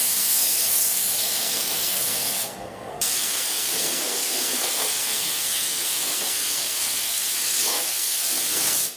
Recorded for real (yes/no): no